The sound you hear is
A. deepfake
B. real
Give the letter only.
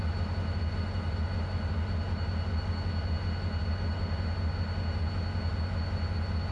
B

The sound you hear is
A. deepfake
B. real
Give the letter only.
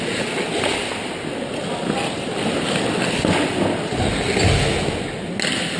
B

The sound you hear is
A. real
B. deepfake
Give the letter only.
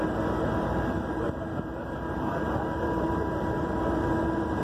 B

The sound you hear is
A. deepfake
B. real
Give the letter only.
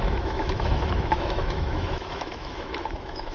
A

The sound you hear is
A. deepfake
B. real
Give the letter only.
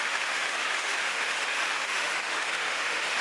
A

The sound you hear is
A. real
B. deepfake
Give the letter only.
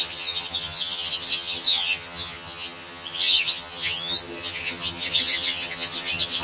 B